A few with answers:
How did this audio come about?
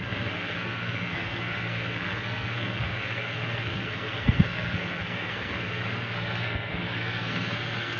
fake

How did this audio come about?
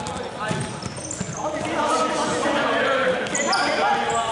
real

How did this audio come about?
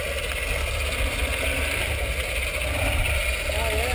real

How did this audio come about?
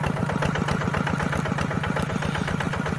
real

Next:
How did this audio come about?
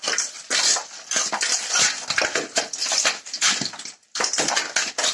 real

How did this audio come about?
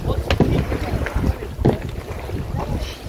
real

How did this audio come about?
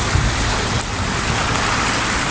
real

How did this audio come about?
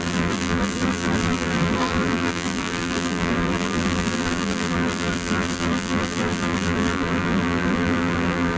fake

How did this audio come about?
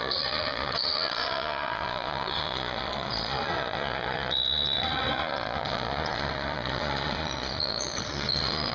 fake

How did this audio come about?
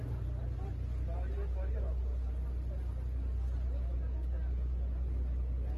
real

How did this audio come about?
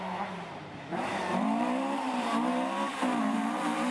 fake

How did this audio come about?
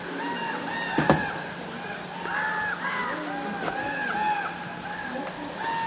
real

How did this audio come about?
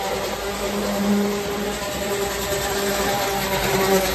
real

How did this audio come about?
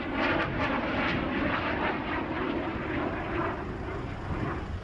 real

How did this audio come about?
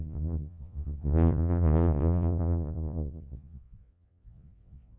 fake